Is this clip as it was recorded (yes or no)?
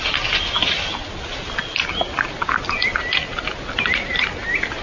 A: yes